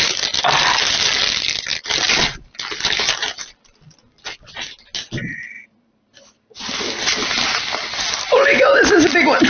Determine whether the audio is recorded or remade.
recorded